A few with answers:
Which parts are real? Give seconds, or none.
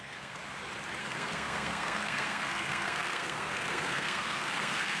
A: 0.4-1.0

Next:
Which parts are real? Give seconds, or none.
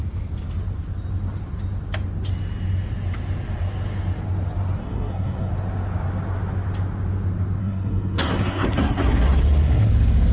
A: 0.0-4.8; 5.5-7.6; 9.9-10.3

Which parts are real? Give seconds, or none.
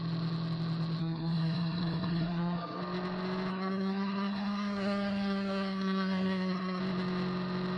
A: 0.0-1.0; 2.8-3.5; 6.8-7.8